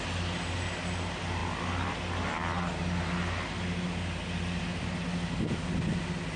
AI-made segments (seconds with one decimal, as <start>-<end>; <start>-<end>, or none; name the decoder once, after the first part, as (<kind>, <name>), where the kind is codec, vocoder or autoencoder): none